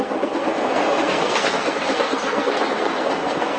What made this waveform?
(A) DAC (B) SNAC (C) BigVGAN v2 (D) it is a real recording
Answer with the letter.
B